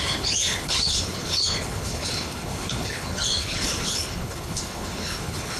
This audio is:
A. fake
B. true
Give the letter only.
A